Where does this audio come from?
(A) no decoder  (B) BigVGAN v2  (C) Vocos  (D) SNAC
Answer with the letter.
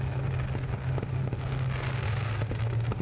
A